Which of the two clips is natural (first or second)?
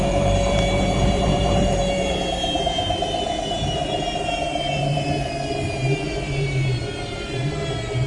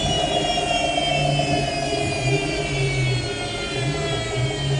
second